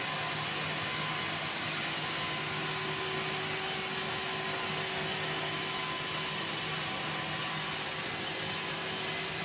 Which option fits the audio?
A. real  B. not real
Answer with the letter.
A